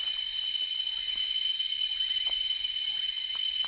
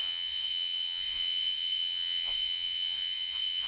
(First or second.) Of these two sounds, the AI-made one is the second